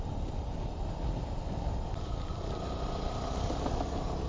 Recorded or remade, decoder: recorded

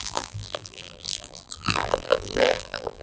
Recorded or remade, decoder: remade, vocoder, BigVGAN v2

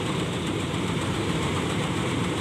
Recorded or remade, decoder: remade, vocoder, BigVGAN v2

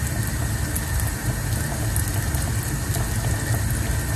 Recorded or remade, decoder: recorded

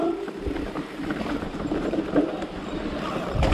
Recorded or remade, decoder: remade, vocoder, BigVGAN v2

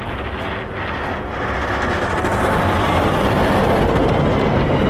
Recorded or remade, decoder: recorded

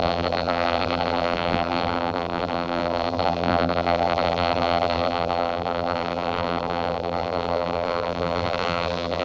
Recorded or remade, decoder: remade, vocoder, BigVGAN v2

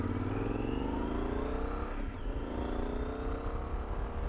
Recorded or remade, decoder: recorded